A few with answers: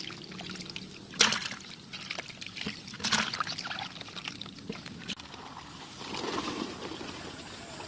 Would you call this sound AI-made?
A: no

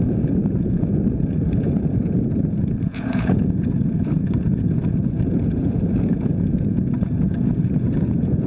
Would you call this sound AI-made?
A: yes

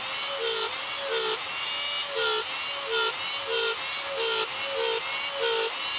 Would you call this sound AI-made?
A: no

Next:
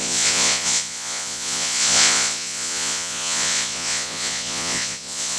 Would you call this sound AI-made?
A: yes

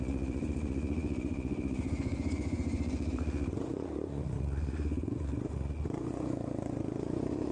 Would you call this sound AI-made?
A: yes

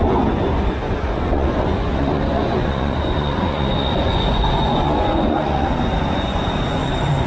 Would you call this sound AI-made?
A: yes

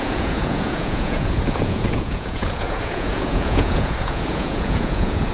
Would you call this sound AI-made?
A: yes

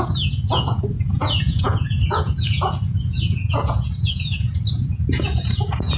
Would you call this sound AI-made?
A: yes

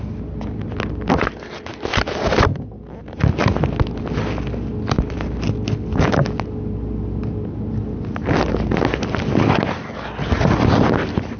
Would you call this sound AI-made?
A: no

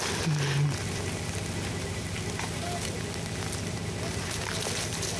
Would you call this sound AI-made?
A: no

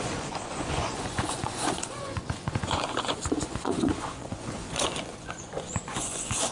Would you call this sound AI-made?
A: yes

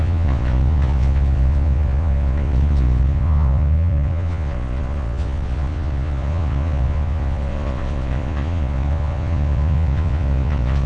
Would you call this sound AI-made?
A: yes